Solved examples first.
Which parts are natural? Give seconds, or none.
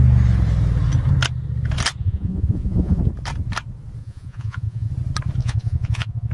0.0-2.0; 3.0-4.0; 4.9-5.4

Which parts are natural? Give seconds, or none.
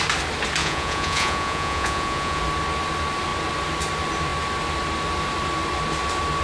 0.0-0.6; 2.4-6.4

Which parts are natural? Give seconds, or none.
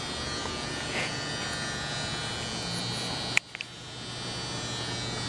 0.0-0.4; 1.3-5.3